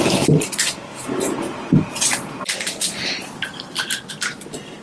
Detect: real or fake real